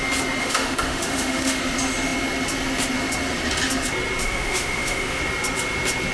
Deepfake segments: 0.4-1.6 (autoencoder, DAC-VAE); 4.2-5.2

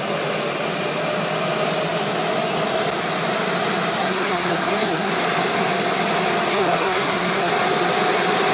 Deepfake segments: 4.0-5.1 (codec, SNAC); 6.5-7.5

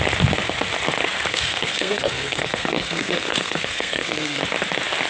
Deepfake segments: 1.3-4.4 (codec, SNAC)